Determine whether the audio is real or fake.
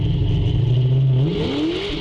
real